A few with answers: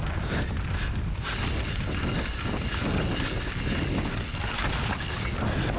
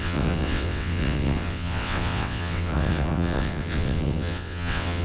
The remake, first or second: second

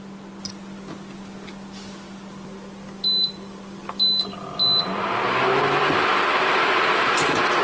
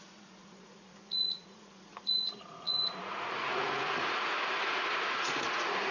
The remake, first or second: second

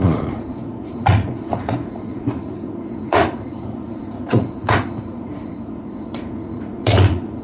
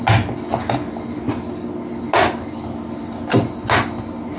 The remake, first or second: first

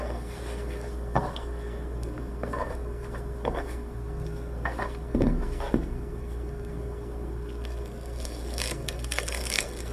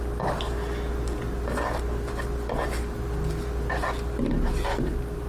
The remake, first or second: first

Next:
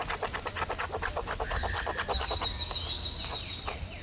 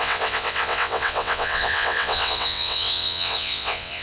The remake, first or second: second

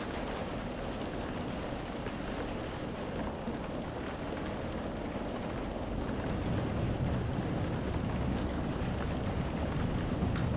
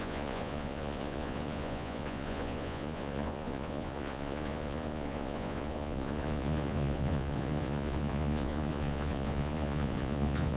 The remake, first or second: second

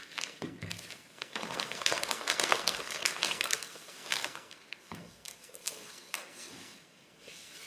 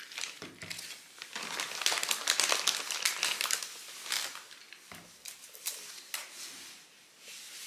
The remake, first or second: first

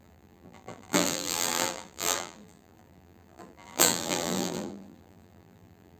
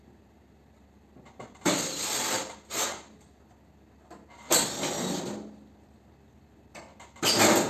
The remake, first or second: first